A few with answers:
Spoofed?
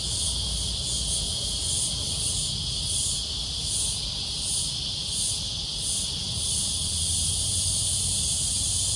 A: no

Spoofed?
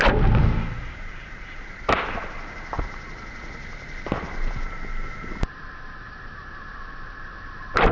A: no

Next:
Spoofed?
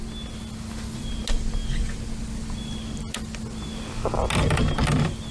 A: no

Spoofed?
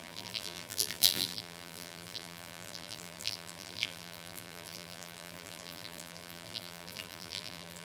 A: yes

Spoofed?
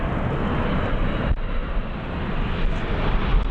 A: no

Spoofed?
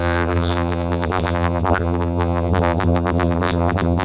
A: yes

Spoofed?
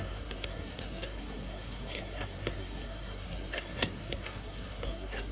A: yes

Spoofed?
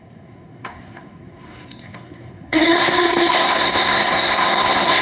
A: yes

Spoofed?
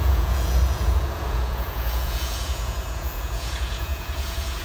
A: yes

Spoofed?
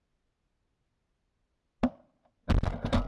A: no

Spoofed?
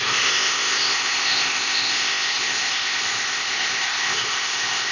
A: yes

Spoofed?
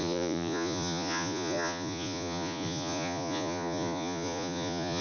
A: yes